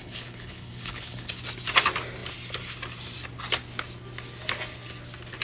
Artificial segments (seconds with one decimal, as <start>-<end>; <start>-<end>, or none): 0.0-1.3